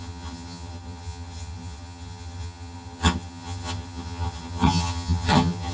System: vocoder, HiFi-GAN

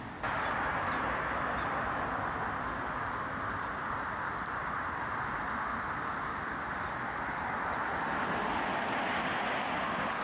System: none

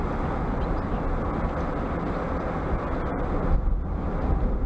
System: none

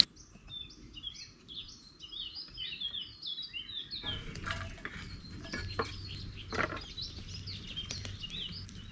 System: none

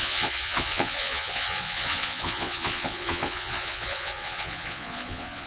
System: vocoder, Vocos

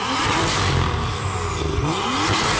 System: none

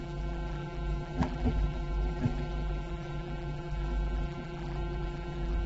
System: vocoder, BigVGAN v2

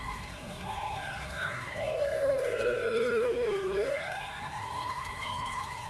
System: codec, SNAC